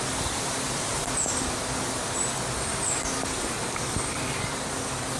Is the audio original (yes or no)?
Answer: no